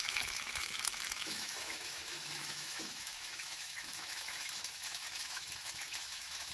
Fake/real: fake